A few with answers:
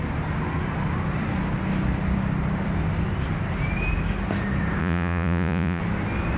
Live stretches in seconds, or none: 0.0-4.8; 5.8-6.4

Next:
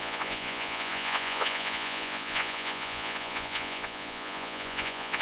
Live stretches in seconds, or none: none

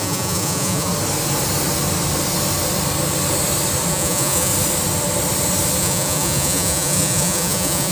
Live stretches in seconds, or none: 0.9-3.9; 4.5-5.8

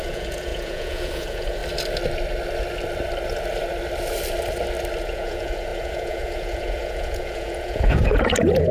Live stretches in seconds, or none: 1.6-5.0

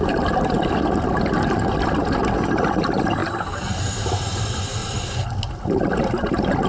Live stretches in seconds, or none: 0.0-6.7

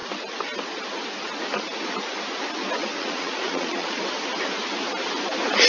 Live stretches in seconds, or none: 0.0-2.8; 4.0-5.7

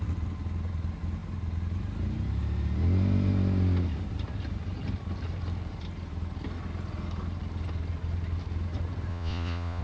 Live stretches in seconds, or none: 0.0-9.1

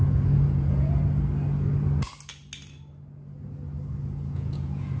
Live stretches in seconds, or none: 1.0-4.0